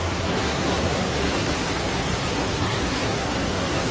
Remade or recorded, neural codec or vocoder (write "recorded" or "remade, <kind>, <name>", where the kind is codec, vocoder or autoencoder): remade, codec, SNAC